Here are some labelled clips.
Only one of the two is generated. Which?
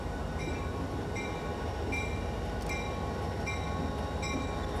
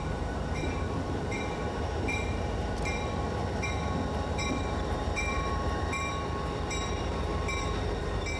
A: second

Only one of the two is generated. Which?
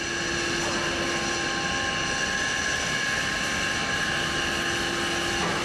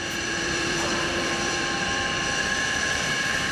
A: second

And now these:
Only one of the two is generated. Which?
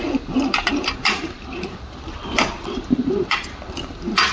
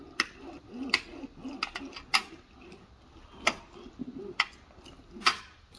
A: first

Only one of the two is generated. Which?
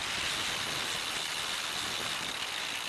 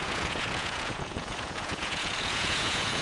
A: second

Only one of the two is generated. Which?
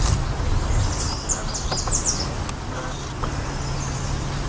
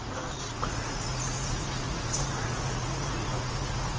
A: second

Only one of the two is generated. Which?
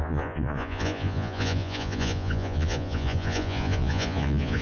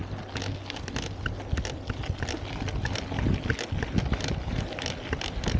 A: first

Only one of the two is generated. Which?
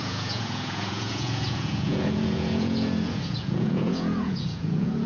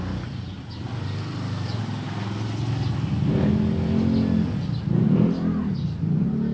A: first